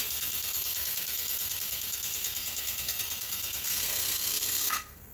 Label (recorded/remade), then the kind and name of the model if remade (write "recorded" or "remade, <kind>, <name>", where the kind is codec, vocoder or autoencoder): remade, codec, SNAC